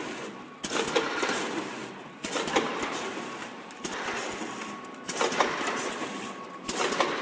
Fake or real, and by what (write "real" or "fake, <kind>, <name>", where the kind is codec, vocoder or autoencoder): real